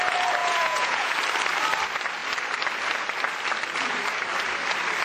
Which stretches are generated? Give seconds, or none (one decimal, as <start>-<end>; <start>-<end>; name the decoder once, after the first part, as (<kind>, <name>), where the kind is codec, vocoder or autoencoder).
0.4-1.1 (vocoder, Vocos)